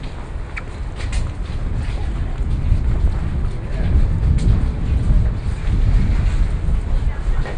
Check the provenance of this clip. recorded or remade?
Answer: recorded